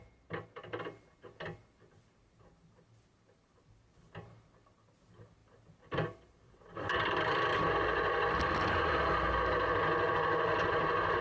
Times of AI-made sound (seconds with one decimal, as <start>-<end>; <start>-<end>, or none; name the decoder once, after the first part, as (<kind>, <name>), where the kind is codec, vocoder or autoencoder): 5.4-9.1 (vocoder, BigVGAN v2)